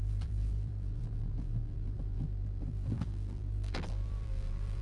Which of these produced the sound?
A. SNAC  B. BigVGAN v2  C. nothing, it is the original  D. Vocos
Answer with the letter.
B